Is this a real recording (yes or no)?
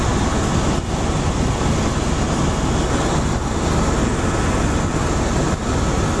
yes